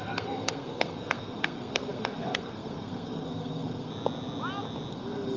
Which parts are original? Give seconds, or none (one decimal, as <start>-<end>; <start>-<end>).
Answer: 3.9-4.9